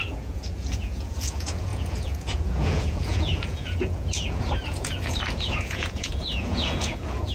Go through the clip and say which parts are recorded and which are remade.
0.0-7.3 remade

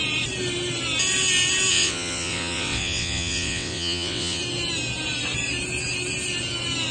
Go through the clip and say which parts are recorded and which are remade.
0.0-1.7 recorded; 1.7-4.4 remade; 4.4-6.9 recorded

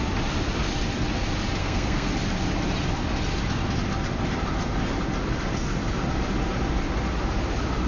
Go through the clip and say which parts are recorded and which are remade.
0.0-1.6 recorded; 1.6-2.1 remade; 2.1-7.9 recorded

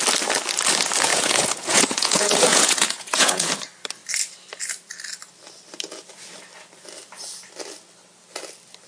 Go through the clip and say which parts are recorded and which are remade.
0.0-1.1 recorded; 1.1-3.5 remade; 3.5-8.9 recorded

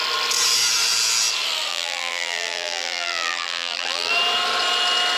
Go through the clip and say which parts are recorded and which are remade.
0.0-1.7 recorded; 1.7-4.1 remade; 4.1-5.2 recorded

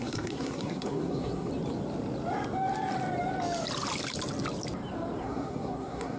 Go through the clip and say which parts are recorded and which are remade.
0.0-1.5 remade; 1.5-5.2 recorded; 5.2-6.2 remade

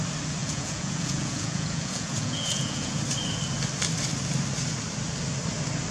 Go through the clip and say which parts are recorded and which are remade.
0.0-0.4 recorded; 0.4-3.0 remade; 3.0-5.9 recorded

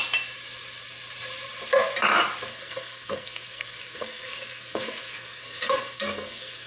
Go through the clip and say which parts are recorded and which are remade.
0.0-2.5 recorded; 2.5-6.7 remade